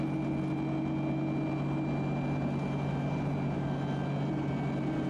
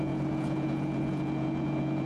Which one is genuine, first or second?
first